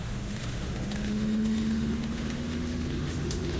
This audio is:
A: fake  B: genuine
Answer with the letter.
A